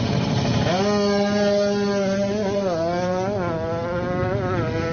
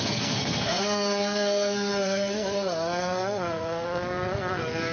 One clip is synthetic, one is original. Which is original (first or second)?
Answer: first